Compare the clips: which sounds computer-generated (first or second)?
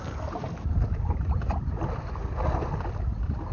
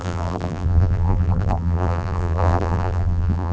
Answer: second